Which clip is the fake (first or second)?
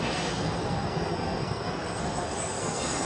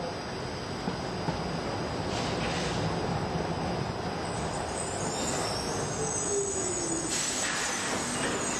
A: first